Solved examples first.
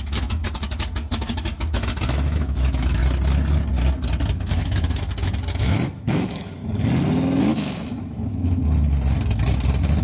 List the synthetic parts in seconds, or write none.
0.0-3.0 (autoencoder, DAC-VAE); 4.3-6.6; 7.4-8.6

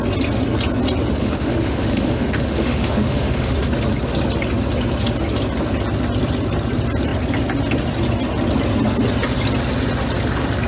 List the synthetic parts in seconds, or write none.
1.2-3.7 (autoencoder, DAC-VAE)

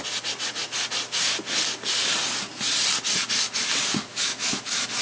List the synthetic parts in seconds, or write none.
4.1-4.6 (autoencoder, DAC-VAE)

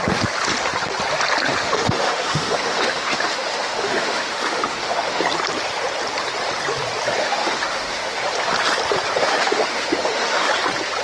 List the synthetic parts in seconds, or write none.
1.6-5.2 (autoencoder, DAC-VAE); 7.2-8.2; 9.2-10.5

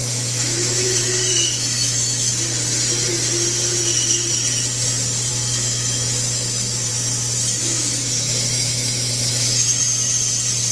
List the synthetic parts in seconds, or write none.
0.0-2.3 (autoencoder, DAC-VAE); 5.3-6.9; 7.6-9.8